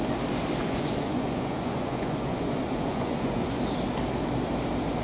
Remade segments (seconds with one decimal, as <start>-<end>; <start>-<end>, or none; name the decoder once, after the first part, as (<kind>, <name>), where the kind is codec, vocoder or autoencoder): 0.6-3.6 (vocoder, Vocos)